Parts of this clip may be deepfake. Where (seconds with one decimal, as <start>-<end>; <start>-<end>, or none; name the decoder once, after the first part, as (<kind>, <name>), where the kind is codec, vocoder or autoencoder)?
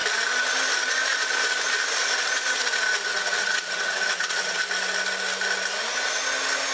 3.1-4.6 (vocoder, WaveNeXt)